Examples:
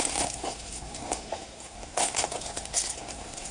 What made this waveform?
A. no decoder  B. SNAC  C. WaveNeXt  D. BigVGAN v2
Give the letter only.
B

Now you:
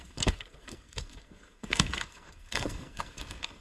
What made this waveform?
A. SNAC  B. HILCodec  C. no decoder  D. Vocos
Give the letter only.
A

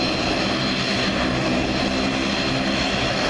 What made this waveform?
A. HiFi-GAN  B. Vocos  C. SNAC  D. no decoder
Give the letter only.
D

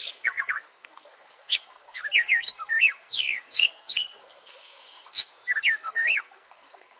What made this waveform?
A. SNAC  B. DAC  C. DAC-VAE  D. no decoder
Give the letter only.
A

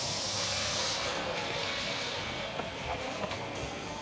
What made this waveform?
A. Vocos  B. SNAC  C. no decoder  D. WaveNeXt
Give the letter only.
B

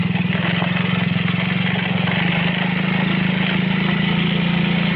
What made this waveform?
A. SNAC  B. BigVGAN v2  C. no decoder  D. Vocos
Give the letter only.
C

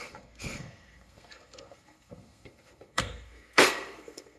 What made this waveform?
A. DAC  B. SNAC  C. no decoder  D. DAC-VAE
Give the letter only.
B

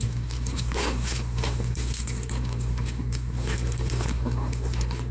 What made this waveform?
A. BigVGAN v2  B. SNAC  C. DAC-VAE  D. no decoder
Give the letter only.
B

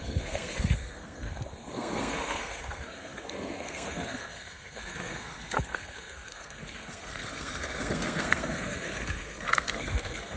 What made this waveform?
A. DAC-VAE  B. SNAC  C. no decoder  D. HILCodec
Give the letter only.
B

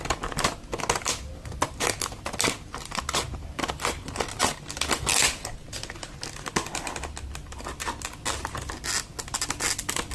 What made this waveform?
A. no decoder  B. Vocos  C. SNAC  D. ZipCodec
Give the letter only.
A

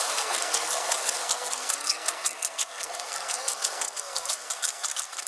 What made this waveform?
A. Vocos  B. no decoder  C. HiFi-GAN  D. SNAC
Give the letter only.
D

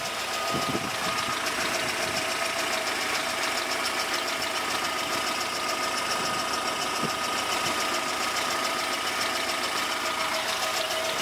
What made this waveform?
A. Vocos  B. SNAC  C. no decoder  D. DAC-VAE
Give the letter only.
C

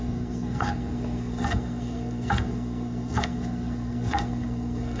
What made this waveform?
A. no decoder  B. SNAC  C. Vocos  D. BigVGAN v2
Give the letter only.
B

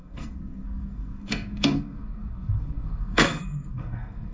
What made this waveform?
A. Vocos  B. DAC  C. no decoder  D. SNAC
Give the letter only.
D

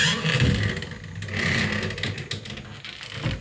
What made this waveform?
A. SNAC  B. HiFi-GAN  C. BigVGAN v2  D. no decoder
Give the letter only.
D